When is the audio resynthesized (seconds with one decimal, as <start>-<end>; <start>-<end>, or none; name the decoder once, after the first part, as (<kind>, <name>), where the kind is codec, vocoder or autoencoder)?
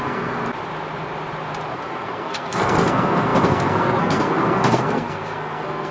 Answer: 0.0-0.4 (codec, SNAC); 1.7-5.9